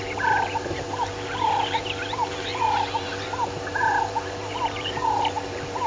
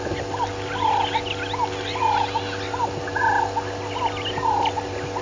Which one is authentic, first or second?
second